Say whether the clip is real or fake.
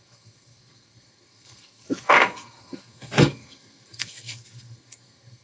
fake